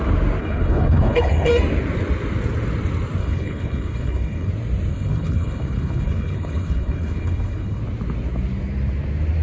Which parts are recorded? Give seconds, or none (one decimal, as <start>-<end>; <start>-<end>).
0.0-0.4; 1.5-3.2; 4.5-4.9; 7.8-9.4